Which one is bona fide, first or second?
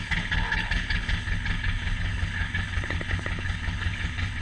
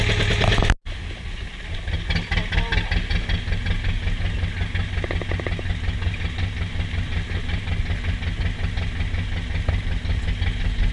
second